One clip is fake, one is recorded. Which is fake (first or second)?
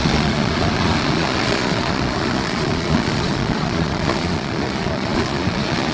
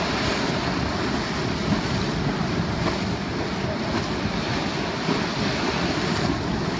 first